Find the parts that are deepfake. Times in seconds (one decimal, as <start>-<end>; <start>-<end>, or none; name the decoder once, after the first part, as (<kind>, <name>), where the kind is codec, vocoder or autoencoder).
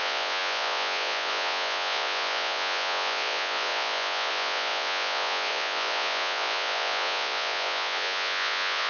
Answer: 0.0-8.9 (vocoder, Vocos)